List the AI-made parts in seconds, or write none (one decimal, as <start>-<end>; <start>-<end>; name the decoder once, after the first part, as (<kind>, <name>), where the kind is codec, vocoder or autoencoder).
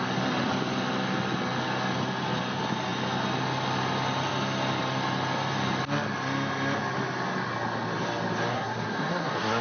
8.5-9.6 (codec, SNAC)